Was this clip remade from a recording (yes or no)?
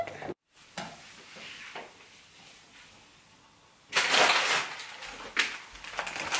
no